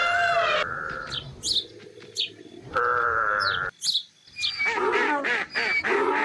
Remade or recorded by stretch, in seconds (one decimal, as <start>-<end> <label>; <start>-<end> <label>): 0.0-1.0 remade; 1.0-6.2 recorded